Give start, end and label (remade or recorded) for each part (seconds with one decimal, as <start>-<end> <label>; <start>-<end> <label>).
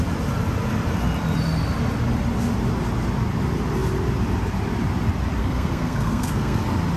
0.0-5.4 recorded; 5.4-6.6 remade; 6.6-7.0 recorded